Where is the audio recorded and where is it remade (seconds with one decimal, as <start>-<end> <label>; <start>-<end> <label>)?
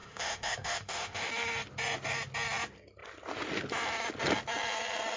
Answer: 0.0-1.3 remade; 1.3-5.2 recorded